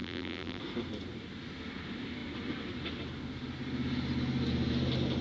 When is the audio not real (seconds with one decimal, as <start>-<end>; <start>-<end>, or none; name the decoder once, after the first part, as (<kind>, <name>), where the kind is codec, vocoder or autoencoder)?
0.0-0.6 (vocoder, BigVGAN v2)